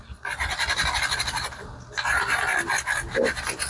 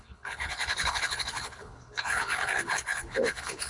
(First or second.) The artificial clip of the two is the second